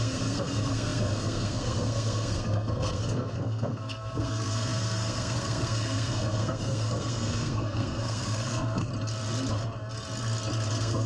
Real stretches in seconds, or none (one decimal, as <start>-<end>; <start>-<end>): 8.9-10.7